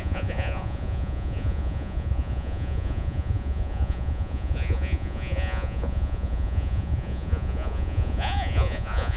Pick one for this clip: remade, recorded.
remade